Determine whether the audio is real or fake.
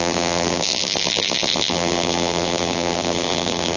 fake